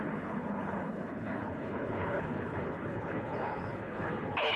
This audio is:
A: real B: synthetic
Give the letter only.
B